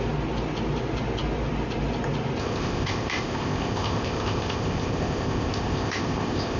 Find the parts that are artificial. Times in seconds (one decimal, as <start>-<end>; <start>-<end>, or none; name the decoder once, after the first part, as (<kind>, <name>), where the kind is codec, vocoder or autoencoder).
2.4-6.6 (codec, ZipCodec)